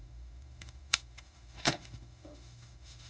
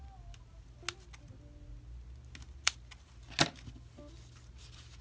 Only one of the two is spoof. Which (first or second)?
first